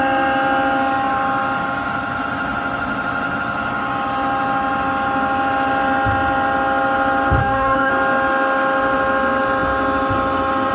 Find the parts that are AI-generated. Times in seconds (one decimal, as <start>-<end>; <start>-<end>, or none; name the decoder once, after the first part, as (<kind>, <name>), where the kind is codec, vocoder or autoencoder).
7.4-7.9 (codec, DAC)